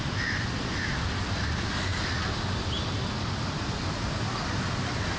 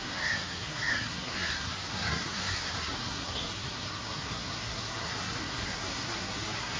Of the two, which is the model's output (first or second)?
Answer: second